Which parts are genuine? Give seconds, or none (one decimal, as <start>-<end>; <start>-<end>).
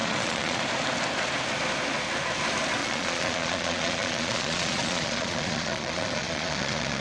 0.6-2.8